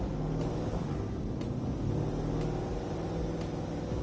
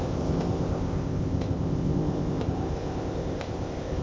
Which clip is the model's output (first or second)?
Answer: second